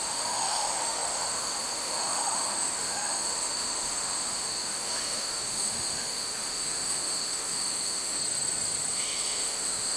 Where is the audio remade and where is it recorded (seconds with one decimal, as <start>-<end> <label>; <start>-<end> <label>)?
0.0-8.2 remade; 8.2-8.9 recorded; 8.9-10.0 remade